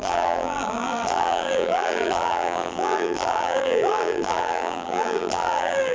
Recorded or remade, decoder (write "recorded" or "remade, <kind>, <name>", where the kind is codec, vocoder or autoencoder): remade, vocoder, BigVGAN v2